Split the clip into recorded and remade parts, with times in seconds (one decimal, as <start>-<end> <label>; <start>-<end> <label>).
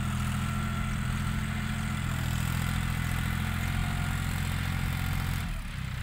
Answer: 0.0-6.0 recorded